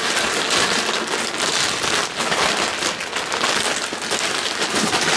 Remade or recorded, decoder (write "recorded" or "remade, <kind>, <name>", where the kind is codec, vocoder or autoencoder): recorded